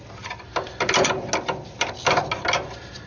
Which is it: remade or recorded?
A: recorded